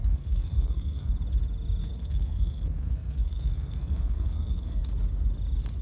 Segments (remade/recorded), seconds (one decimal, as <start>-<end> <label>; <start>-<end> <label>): 0.0-1.1 remade; 1.1-1.8 recorded; 1.8-4.9 remade; 4.9-5.8 recorded

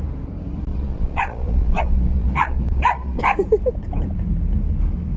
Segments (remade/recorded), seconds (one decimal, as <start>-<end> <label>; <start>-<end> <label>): 0.0-0.7 recorded; 0.7-3.2 remade; 3.2-5.2 recorded

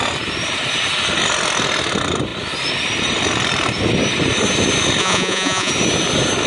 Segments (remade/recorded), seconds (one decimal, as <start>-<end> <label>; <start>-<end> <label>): 0.0-5.0 recorded; 5.0-5.7 remade; 5.7-6.5 recorded

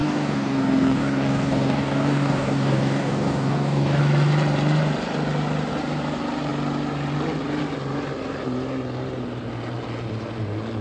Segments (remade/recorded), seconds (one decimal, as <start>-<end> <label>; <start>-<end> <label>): 0.0-4.0 remade; 4.0-10.8 recorded

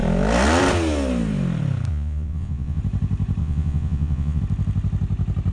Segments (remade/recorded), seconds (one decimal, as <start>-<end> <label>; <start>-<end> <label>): 0.0-1.9 recorded; 1.9-2.8 remade; 2.8-3.4 recorded; 3.4-4.4 remade; 4.4-5.5 recorded

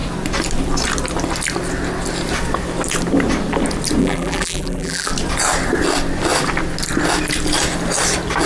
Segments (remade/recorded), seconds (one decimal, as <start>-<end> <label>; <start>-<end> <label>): 0.0-4.0 recorded; 4.0-5.1 remade; 5.1-8.5 recorded

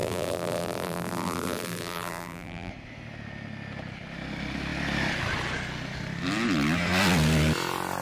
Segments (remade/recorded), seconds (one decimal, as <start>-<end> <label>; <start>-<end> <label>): 0.0-2.7 remade; 2.7-8.0 recorded

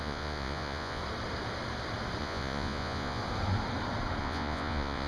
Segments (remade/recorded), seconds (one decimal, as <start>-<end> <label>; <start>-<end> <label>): 0.0-1.0 remade; 1.0-2.2 recorded; 2.2-3.2 remade; 3.2-4.2 recorded; 4.2-5.1 remade